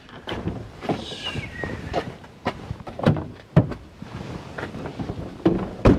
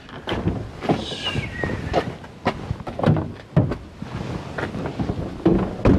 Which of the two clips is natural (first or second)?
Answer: second